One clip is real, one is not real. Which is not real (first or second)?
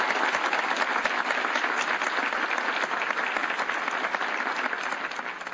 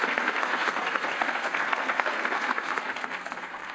second